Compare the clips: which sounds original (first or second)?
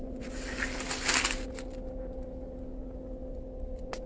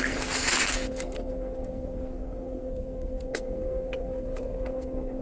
first